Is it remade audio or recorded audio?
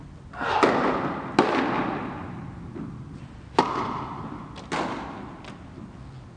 recorded